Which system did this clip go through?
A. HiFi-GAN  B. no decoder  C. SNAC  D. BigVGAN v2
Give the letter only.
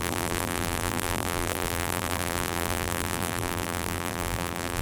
D